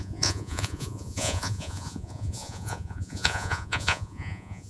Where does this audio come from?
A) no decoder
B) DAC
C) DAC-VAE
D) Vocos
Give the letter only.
D